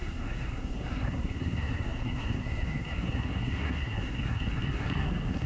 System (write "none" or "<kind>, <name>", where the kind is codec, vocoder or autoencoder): codec, SNAC